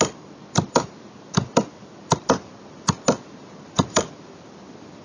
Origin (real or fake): real